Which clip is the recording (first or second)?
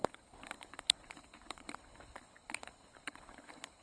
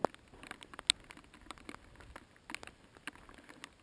second